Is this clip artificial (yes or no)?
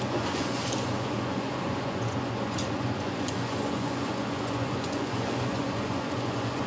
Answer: yes